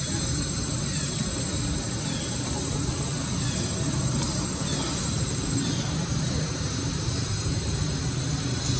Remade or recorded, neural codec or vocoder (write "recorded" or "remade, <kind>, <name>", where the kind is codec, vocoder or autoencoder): recorded